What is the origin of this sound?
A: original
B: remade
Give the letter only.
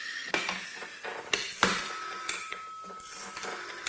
A